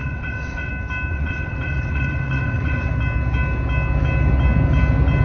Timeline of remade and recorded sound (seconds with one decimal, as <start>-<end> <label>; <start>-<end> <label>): 0.0-0.7 remade; 0.7-1.1 recorded; 1.1-2.9 remade; 2.9-5.2 recorded